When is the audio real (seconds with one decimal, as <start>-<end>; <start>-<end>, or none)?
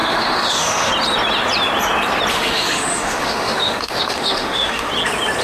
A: 0.9-2.3; 4.9-5.4